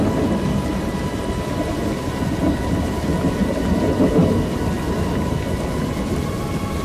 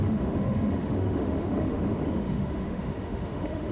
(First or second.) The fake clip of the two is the second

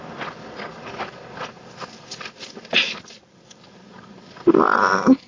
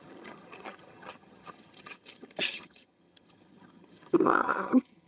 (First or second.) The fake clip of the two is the second